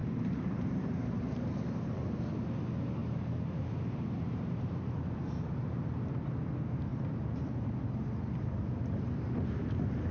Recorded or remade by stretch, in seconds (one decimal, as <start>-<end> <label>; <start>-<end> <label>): 0.0-2.4 remade; 2.4-3.0 recorded; 3.0-4.8 remade; 4.8-6.9 recorded; 6.9-7.5 remade; 7.5-10.1 recorded